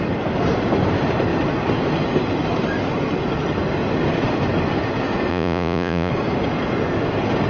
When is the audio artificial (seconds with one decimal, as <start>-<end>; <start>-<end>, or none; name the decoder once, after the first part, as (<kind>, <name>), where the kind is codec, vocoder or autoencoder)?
5.3-6.1 (vocoder, Vocos)